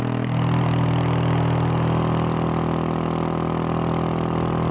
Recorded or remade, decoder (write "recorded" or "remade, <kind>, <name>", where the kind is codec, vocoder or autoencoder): recorded